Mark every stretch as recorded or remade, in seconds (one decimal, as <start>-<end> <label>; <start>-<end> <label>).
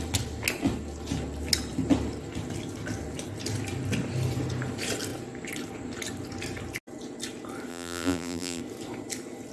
0.0-7.7 recorded; 7.7-8.6 remade; 8.6-9.5 recorded